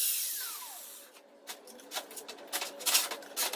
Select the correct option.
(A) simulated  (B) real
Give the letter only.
B